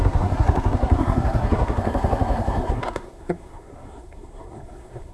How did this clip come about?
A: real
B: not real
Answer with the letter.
B